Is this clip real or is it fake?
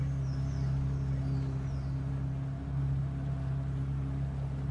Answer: real